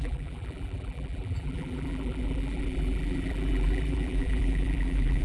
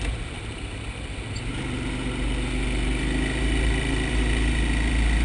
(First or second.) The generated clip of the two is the first